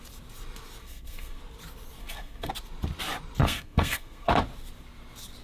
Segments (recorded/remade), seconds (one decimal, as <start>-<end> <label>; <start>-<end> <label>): 0.0-0.8 recorded; 0.8-1.4 remade; 1.4-2.0 recorded; 2.0-2.5 remade; 2.5-3.4 recorded; 3.4-4.3 remade; 4.3-5.4 recorded